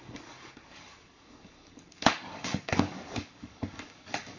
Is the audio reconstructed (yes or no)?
yes